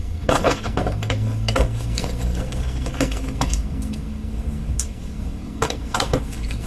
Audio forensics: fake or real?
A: fake